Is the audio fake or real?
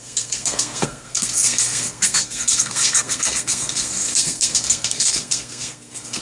fake